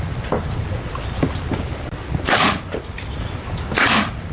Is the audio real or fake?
real